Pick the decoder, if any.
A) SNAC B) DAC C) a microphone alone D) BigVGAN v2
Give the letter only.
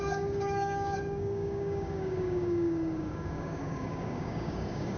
B